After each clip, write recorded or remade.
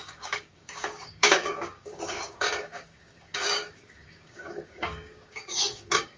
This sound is remade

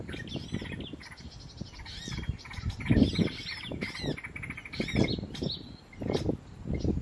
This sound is recorded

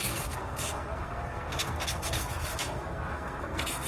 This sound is remade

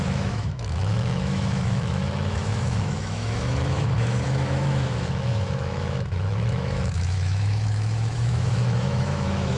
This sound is remade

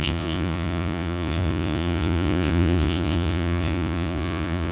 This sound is remade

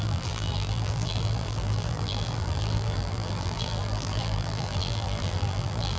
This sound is remade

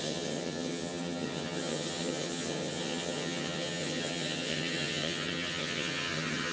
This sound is remade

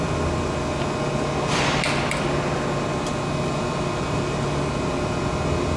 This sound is recorded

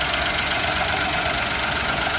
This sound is remade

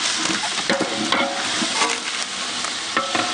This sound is recorded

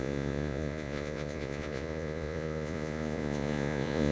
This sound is remade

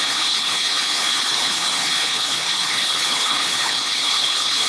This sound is remade